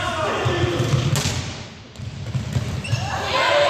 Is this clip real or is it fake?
real